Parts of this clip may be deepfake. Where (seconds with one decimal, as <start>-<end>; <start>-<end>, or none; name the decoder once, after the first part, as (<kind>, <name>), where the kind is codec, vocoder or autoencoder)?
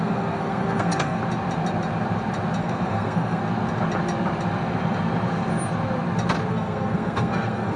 0.0-1.2 (codec, SNAC); 2.6-3.4; 6.5-7.8